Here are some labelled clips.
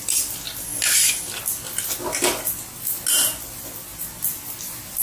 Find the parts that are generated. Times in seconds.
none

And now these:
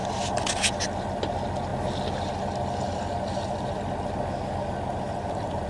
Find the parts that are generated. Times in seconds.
none